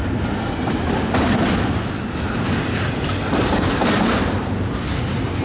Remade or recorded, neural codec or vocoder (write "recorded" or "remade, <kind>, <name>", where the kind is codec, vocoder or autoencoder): recorded